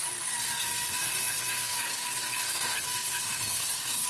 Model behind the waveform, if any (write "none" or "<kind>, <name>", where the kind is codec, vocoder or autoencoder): codec, SNAC